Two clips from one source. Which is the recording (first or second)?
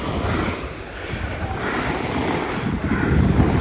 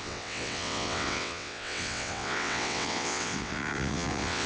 first